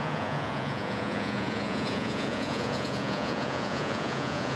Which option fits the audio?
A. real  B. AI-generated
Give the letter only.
B